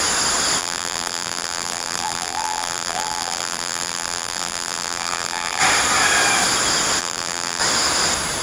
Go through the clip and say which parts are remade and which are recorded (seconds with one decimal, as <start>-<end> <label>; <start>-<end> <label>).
0.0-0.6 recorded; 0.6-5.6 remade; 5.6-7.0 recorded; 7.0-7.6 remade; 7.6-8.4 recorded